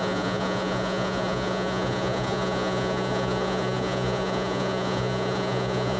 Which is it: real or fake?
fake